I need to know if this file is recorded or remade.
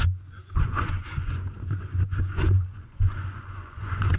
remade